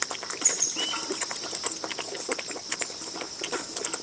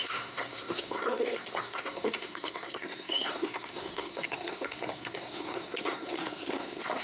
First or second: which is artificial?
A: second